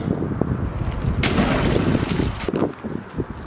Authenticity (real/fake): real